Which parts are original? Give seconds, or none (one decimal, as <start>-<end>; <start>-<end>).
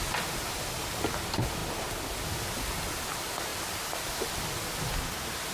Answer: 0.0-5.5